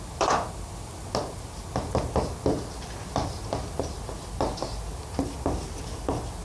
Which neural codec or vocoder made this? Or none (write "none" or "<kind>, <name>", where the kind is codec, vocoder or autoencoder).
none